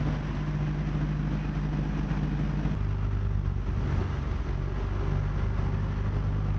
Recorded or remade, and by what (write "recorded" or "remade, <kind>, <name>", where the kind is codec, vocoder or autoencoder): recorded